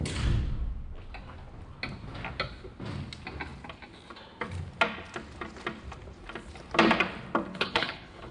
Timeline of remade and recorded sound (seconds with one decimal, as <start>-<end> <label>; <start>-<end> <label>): 0.0-7.5 recorded; 7.5-8.3 remade